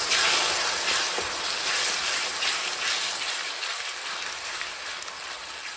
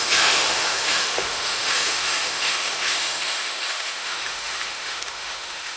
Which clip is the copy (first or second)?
second